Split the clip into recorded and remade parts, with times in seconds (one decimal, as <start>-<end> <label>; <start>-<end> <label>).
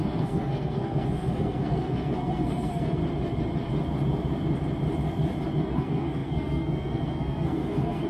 0.0-3.0 remade; 3.0-5.6 recorded; 5.6-8.1 remade